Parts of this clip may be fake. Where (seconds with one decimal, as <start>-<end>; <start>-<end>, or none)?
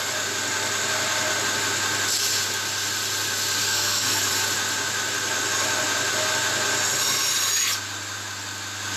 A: 3.6-4.3